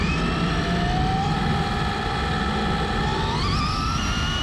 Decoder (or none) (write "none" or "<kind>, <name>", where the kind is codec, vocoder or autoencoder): none